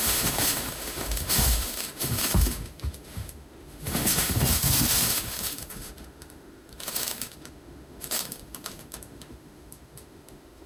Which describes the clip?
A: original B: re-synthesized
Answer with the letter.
B